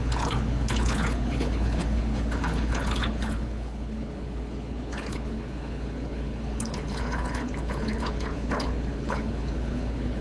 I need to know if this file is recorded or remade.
remade